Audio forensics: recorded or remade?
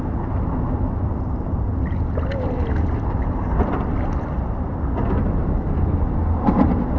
recorded